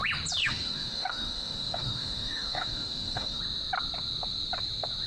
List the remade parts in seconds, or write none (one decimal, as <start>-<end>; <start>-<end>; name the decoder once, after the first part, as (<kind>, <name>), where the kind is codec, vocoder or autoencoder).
0.4-3.4 (autoencoder, DAC-VAE)